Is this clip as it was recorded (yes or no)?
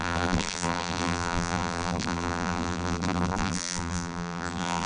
no